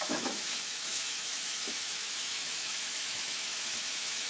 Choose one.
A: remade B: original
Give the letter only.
A